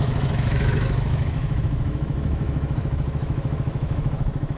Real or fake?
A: fake